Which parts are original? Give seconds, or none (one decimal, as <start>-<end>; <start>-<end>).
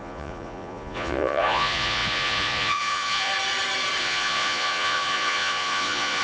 3.3-4.0